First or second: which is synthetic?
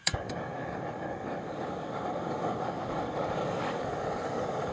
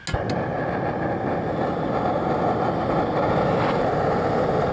first